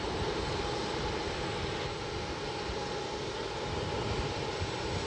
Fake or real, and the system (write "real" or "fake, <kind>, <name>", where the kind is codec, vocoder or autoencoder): real